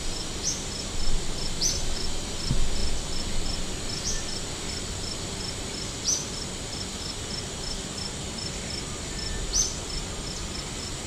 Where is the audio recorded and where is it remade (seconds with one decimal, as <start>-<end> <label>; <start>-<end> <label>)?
0.0-11.1 recorded